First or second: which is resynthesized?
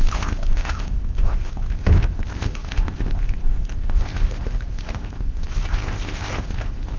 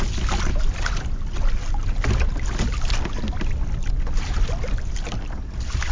first